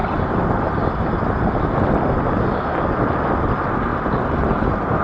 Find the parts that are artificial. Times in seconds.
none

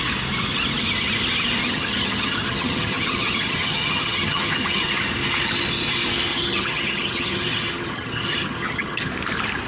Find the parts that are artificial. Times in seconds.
1.6-5.0 (vocoder, HiFi-GAN); 6.3-9.1